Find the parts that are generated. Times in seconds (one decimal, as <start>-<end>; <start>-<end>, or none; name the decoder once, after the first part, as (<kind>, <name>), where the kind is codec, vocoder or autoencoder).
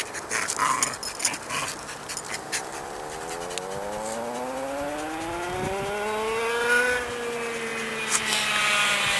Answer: none